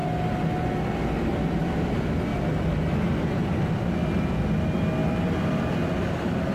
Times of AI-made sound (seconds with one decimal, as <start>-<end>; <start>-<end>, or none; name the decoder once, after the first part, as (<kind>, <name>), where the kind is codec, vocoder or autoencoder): none